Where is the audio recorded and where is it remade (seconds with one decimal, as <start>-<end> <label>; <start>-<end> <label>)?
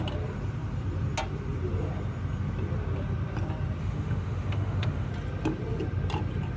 0.0-3.8 recorded; 3.8-5.1 remade; 5.1-6.6 recorded